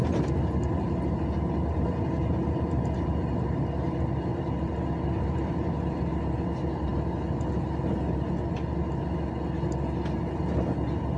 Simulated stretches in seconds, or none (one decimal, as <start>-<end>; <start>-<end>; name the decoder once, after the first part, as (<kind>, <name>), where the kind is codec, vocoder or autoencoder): none